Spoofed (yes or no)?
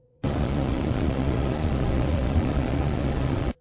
yes